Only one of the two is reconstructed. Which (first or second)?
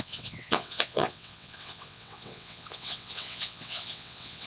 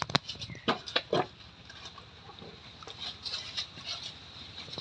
first